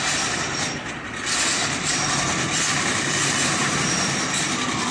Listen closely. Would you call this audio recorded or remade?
recorded